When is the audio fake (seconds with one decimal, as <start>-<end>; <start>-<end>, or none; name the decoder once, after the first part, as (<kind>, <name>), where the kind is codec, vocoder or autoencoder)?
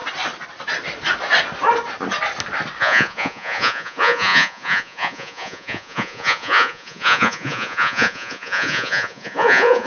2.8-9.9 (vocoder, Vocos)